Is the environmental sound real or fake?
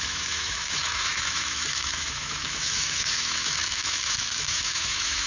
fake